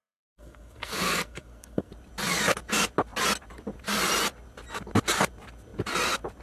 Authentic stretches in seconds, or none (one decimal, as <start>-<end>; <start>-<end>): 1.9-6.4